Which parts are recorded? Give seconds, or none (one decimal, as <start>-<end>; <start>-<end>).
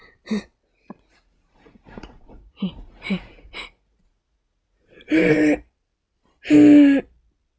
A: 0.0-0.7; 5.1-7.6